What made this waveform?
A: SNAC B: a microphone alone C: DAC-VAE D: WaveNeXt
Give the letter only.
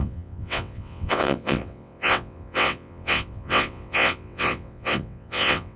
D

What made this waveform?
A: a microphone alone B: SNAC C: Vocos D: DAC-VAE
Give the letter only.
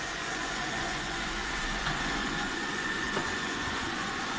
C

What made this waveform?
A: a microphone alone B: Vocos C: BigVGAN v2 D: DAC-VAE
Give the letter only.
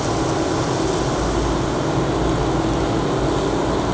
A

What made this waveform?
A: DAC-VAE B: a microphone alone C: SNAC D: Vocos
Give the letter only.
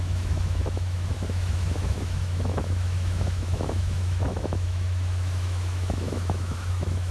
A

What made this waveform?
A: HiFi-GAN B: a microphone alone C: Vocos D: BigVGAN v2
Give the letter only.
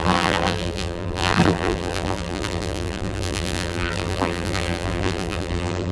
D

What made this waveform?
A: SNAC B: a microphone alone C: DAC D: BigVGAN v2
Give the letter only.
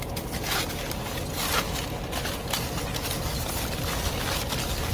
B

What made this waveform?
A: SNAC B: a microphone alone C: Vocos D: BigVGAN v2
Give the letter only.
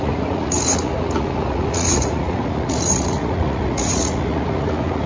C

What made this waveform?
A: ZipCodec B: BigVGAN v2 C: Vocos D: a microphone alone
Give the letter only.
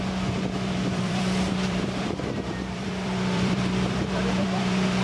B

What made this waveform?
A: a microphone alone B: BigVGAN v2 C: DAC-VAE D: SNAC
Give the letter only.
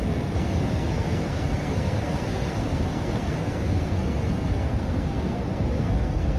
D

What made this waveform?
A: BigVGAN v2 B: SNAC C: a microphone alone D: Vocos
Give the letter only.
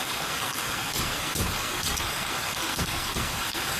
B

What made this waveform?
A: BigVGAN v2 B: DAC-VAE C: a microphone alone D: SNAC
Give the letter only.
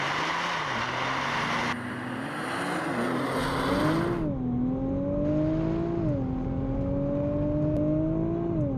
C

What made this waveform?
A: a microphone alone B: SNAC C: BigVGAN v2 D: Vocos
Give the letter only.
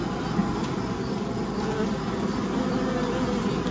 A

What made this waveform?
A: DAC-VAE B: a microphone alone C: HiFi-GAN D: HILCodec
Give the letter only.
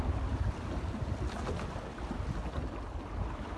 B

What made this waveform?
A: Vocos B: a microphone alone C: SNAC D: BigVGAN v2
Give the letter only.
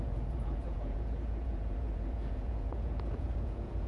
A